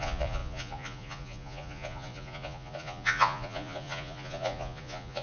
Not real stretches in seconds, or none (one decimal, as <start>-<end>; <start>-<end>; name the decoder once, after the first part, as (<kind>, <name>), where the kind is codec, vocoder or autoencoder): 0.0-5.2 (vocoder, Vocos)